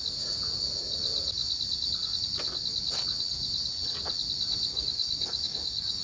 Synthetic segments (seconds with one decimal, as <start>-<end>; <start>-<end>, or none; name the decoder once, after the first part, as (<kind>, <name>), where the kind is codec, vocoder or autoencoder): 4.7-6.0 (codec, DAC)